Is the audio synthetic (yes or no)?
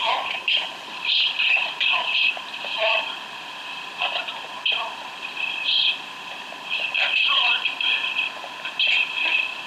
no